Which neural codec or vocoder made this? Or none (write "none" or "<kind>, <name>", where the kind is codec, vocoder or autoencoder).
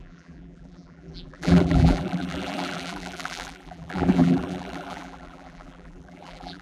vocoder, BigVGAN v2